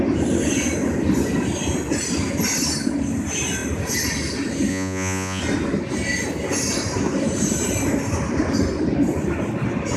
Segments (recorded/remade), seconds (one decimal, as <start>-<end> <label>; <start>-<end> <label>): 0.0-4.7 recorded; 4.7-5.4 remade; 5.4-10.0 recorded